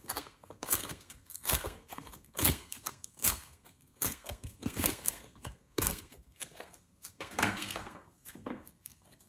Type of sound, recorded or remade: remade